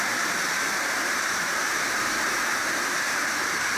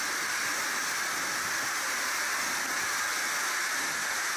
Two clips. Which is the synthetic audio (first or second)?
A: first